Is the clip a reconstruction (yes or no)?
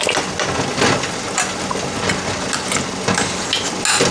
no